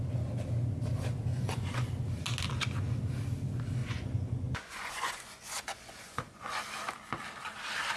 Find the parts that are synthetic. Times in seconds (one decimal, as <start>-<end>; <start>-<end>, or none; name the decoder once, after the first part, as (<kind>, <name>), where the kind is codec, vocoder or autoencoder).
1.3-1.9 (vocoder, Vocos); 3.8-6.6